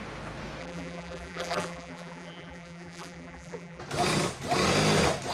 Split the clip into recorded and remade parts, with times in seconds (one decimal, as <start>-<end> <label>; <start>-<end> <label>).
0.0-0.6 recorded; 0.6-3.8 remade; 3.8-5.3 recorded